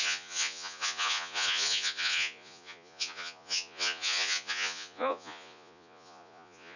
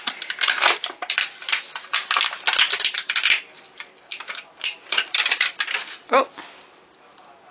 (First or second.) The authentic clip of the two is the second